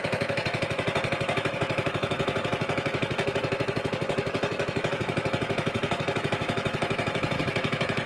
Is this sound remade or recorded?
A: remade